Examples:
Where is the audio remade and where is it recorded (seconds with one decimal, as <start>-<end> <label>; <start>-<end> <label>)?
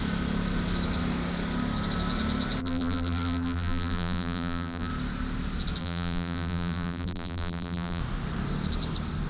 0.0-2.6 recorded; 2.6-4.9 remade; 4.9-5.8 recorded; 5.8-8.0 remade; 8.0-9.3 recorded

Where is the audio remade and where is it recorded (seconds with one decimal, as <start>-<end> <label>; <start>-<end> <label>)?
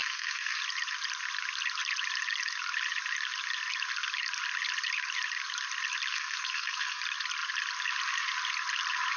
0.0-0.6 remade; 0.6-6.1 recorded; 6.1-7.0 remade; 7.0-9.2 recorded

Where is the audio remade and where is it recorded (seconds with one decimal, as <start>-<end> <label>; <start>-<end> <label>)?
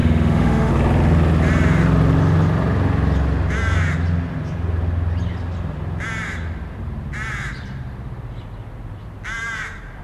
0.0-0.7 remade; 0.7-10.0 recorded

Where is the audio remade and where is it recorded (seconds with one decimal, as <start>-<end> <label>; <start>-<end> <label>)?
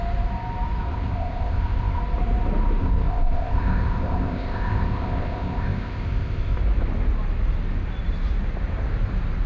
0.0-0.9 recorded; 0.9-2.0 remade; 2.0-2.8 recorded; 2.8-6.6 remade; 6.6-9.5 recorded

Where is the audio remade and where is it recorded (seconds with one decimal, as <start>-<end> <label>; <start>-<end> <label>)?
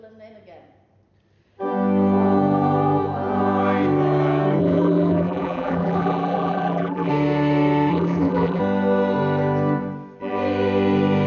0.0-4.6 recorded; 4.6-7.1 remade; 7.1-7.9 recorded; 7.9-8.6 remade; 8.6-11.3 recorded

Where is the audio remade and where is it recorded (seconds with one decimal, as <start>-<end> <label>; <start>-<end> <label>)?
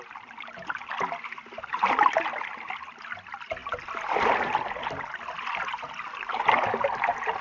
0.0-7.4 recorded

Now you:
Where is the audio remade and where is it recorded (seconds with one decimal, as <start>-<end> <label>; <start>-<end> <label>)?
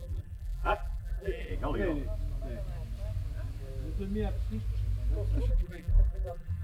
0.0-1.5 remade; 1.5-5.5 recorded; 5.5-6.6 remade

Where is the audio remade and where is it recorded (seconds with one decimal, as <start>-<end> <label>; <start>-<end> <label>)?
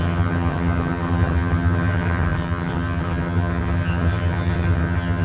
0.0-5.2 remade